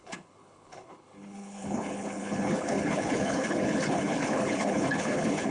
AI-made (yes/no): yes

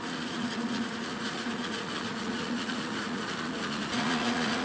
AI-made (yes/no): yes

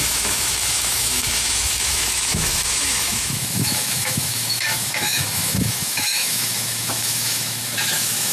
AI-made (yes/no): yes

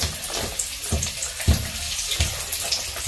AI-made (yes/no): no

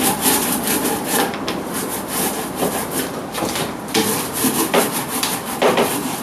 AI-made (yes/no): yes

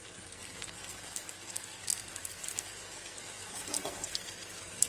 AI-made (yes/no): yes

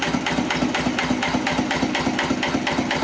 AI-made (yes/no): no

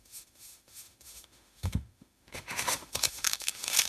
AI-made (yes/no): yes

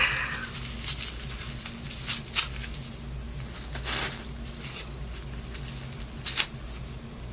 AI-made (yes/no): no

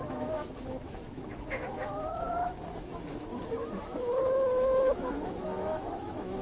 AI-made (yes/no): yes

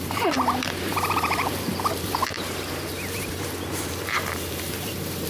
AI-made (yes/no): yes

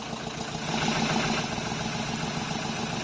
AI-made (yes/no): no